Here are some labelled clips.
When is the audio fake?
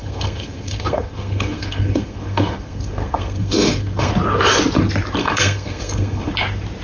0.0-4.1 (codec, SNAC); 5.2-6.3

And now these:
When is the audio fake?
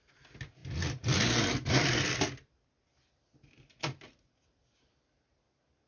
none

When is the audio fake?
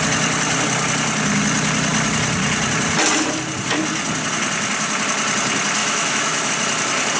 5.8-6.5 (autoencoder, DAC-VAE)